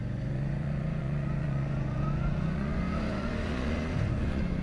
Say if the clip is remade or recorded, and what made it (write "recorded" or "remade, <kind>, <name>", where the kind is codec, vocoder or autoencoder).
remade, vocoder, Vocos